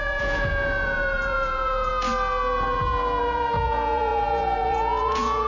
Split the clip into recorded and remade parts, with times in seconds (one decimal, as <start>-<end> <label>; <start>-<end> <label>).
0.0-1.9 remade; 1.9-3.2 recorded; 3.2-5.5 remade